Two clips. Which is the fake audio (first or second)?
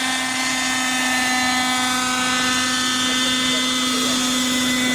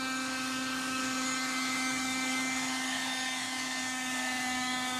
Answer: second